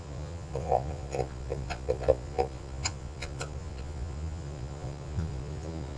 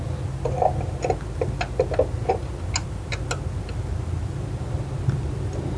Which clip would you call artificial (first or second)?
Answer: first